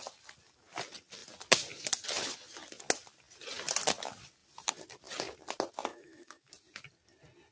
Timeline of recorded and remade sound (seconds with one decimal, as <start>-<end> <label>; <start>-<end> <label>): 0.0-5.9 recorded; 5.9-6.5 remade; 6.5-7.5 recorded